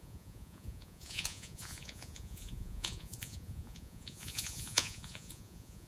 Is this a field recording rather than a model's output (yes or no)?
no